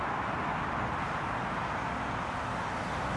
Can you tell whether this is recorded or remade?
recorded